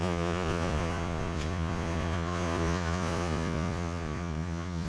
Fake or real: fake